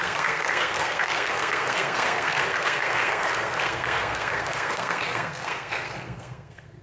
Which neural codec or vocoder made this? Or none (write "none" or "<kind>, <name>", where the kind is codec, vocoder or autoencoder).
codec, SNAC